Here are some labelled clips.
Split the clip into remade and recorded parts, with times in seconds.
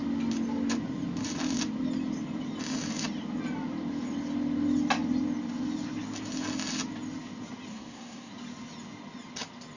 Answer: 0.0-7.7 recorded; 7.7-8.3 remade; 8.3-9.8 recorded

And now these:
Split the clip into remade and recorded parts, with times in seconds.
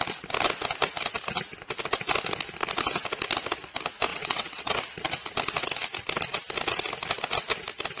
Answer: 0.0-4.1 recorded; 4.1-4.7 remade; 4.7-8.0 recorded